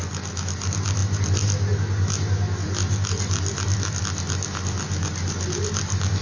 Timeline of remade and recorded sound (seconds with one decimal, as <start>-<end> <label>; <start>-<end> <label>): 0.0-6.2 recorded

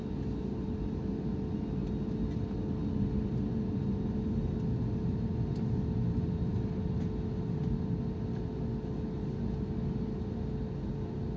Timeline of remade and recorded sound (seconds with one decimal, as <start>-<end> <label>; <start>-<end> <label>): 0.0-11.4 recorded

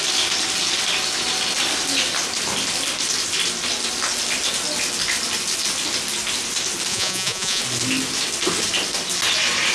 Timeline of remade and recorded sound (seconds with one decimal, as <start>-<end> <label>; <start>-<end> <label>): 0.0-6.9 recorded; 6.9-7.6 remade; 7.6-9.7 recorded

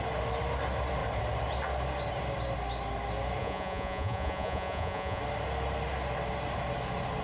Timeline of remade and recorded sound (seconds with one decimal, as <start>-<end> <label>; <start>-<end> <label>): 0.0-3.4 recorded; 3.4-5.2 remade; 5.2-7.2 recorded

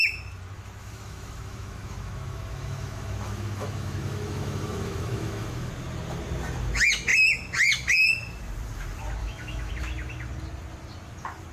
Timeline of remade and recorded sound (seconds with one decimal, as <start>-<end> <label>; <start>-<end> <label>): 0.0-0.8 recorded; 0.8-5.7 remade; 5.7-9.2 recorded; 9.2-9.7 remade; 9.7-11.5 recorded

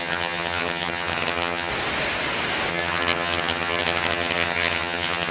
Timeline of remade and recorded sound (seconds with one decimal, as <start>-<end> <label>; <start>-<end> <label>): 0.0-1.7 remade; 1.7-2.7 recorded; 2.7-5.3 remade